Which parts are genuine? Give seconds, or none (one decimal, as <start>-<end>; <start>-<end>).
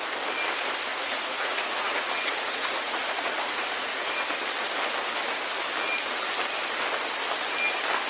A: 0.0-0.9; 4.1-8.1